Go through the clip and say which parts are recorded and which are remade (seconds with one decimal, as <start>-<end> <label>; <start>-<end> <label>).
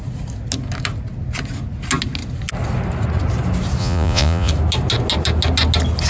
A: 0.0-3.8 recorded; 3.8-4.5 remade; 4.5-6.1 recorded